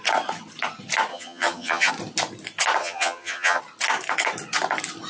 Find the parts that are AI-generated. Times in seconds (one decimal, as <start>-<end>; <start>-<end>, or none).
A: 1.1-1.9; 2.8-3.6

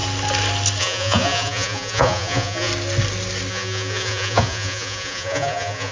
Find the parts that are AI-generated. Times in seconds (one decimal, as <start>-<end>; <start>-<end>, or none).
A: 0.8-2.7; 3.5-5.9